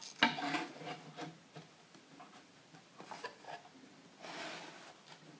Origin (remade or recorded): recorded